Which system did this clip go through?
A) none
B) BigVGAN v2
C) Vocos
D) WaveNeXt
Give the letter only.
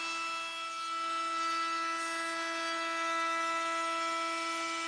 A